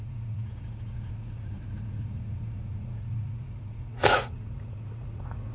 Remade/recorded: remade